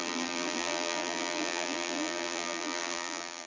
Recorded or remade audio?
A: remade